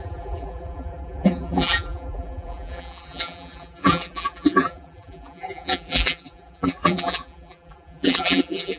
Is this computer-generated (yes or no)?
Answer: yes